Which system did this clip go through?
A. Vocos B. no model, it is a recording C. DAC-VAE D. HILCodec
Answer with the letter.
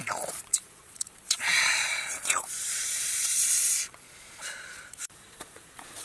A